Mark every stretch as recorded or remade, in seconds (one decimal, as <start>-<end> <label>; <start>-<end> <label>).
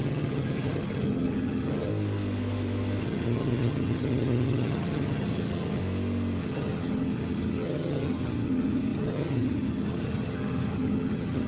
0.0-1.9 remade; 1.9-3.0 recorded; 3.0-5.8 remade; 5.8-6.4 recorded; 6.4-11.5 remade